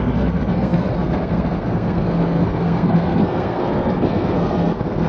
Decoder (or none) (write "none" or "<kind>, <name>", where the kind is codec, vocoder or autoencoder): codec, SNAC